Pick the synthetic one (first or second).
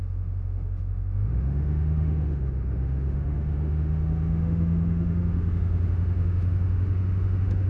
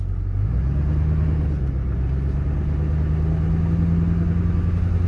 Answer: first